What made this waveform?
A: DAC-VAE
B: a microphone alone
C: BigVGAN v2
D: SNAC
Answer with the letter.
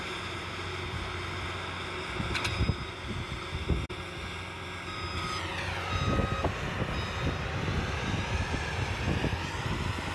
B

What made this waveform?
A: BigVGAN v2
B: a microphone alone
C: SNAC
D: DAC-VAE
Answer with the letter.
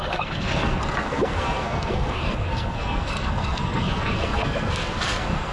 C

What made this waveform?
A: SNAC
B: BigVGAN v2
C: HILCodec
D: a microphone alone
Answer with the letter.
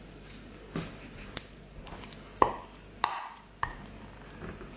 D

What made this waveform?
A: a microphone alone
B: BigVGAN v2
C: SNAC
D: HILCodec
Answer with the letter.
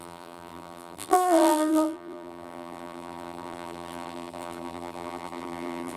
B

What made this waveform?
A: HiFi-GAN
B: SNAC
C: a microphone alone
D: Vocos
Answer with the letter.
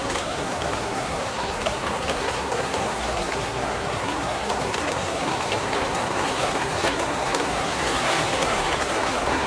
B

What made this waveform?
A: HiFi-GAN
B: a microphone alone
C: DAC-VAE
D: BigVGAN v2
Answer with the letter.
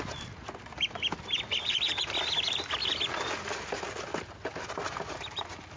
B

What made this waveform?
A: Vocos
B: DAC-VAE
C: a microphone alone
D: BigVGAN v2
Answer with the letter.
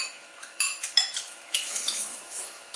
B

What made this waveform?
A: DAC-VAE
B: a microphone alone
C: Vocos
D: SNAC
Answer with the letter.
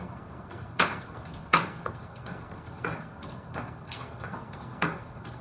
D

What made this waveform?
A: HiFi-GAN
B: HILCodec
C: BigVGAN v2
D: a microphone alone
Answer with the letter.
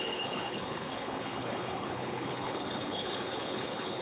B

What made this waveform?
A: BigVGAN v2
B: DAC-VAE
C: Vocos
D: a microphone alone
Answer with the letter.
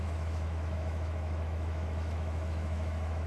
B